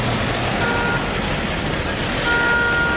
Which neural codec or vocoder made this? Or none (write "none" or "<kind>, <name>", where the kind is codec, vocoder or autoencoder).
none